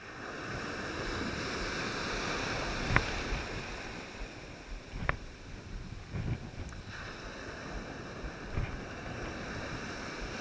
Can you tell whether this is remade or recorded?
recorded